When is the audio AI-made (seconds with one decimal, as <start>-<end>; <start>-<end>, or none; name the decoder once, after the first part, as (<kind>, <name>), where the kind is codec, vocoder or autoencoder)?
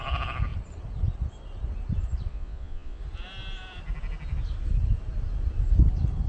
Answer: 2.3-3.0 (vocoder, Vocos)